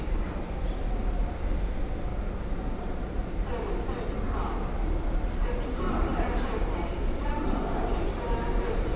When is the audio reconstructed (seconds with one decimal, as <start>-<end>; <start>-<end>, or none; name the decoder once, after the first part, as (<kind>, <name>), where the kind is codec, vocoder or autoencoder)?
2.1-3.5 (vocoder, BigVGAN v2); 5.4-8.4